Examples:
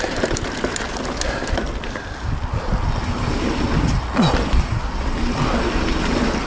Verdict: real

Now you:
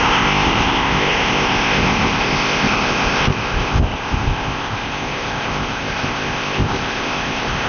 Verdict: fake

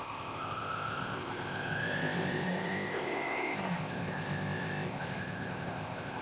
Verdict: fake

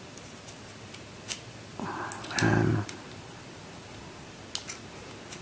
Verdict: real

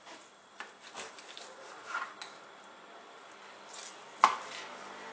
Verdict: real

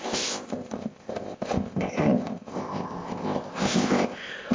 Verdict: fake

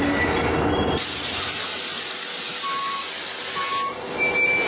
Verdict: real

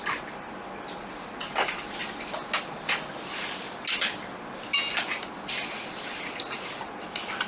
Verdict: real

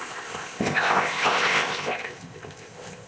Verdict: fake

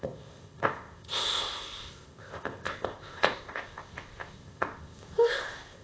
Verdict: fake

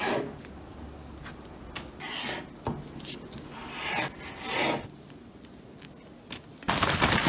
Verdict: real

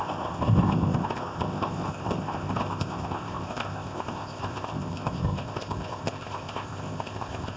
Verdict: fake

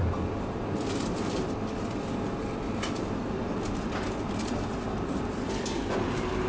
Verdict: real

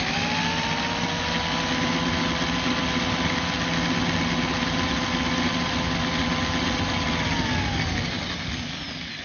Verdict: real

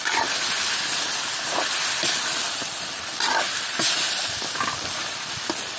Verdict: real